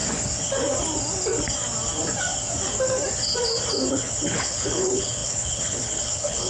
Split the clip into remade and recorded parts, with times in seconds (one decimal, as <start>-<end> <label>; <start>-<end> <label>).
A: 0.0-3.9 recorded; 3.9-6.5 remade